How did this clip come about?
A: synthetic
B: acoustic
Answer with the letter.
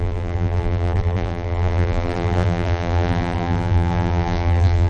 A